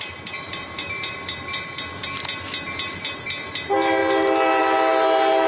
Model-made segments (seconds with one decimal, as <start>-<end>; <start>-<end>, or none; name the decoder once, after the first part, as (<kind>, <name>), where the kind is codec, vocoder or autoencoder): none